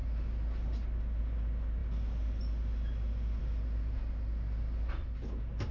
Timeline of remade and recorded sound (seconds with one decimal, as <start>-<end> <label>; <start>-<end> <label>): 0.0-5.7 recorded